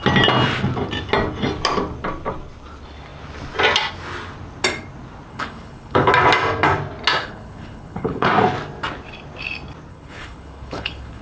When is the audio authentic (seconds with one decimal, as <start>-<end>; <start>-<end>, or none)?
0.0-5.3; 6.1-7.2; 8.3-9.9